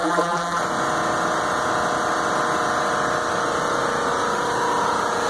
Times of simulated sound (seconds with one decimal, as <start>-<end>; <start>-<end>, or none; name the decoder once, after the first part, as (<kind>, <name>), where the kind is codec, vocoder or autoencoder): 0.0-0.6 (vocoder, BigVGAN v2)